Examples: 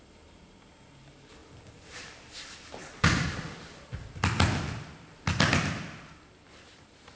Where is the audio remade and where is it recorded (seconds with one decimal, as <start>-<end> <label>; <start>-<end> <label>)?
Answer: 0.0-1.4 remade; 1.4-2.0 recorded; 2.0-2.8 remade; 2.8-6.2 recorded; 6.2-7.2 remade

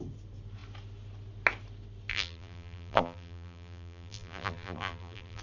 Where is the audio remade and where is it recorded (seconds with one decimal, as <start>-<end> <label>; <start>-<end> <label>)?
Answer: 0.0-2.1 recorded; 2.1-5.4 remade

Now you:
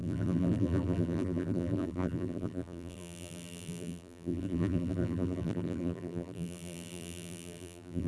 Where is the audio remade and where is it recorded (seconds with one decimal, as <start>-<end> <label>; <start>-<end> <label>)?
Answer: 0.0-8.1 remade

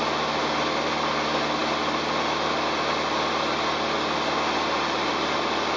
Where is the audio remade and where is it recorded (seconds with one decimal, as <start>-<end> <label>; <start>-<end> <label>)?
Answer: 0.0-5.8 recorded

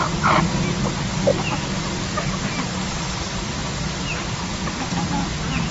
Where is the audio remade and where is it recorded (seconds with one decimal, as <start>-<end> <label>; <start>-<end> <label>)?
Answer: 0.0-5.7 recorded